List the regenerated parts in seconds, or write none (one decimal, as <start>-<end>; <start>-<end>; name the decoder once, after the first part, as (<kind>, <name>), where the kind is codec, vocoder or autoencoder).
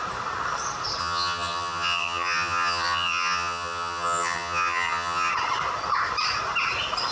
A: 1.0-5.3 (vocoder, HiFi-GAN)